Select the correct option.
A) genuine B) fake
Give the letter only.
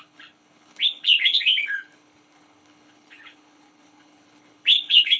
B